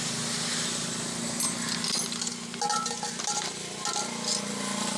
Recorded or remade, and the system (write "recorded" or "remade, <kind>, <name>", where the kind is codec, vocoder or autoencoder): recorded